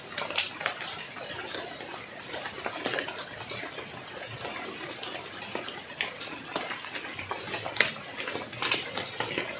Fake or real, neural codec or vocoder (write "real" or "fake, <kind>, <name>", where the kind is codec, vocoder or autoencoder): real